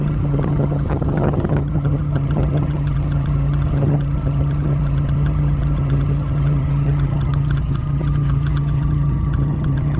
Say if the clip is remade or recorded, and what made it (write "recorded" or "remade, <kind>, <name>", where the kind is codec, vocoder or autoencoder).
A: remade, vocoder, HiFi-GAN